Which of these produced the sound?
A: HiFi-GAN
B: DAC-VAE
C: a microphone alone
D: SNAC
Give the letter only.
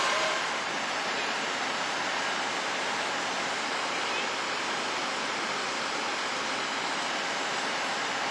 C